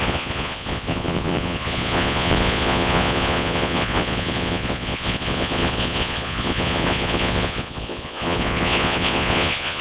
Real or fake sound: fake